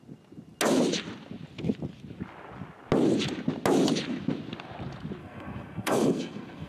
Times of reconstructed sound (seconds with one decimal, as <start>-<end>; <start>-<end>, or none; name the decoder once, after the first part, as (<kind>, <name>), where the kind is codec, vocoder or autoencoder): 5.2-6.7 (codec, SNAC)